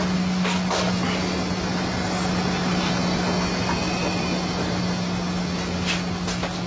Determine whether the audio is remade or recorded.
recorded